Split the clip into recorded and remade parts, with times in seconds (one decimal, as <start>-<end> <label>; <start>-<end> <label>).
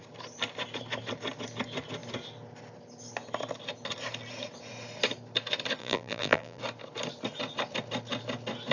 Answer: 0.0-5.8 recorded; 5.8-6.6 remade; 6.6-8.7 recorded